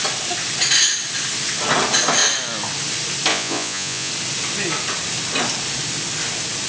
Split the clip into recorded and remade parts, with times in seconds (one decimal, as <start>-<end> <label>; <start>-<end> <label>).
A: 0.0-3.3 recorded; 3.3-4.1 remade; 4.1-6.7 recorded